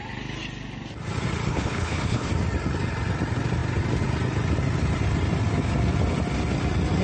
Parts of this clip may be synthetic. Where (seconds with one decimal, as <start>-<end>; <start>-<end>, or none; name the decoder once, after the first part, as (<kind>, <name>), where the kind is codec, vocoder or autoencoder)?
1.5-2.3 (codec, HILCodec)